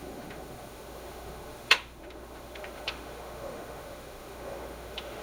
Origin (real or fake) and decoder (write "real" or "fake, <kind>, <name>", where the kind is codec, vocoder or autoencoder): fake, autoencoder, DAC-VAE